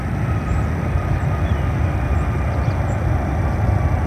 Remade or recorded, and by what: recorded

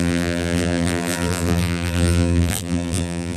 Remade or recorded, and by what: remade, vocoder, BigVGAN v2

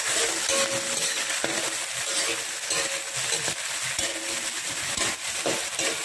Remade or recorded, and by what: recorded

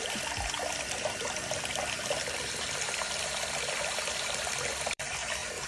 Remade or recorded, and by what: remade, vocoder, BigVGAN v2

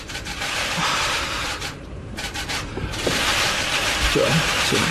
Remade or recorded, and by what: remade, vocoder, BigVGAN v2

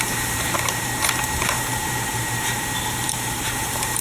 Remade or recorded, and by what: remade, vocoder, BigVGAN v2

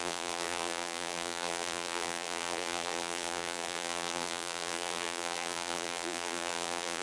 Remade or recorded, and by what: remade, vocoder, BigVGAN v2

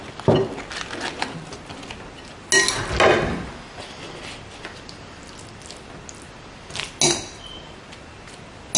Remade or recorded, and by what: recorded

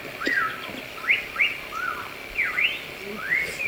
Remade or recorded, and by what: recorded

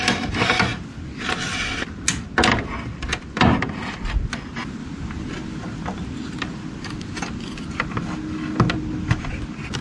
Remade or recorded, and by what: recorded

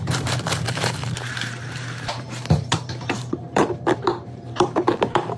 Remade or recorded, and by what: remade, vocoder, BigVGAN v2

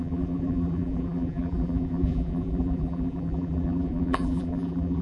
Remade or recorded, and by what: remade, vocoder, BigVGAN v2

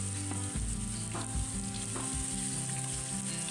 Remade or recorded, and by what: recorded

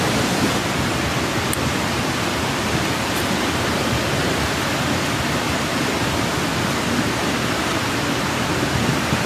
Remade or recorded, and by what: recorded